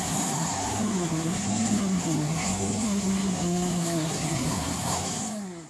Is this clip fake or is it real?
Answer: fake